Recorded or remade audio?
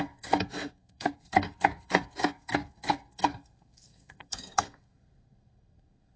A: remade